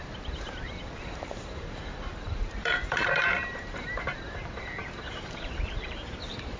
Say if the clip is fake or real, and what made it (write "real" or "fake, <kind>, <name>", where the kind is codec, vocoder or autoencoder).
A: fake, vocoder, BigVGAN v2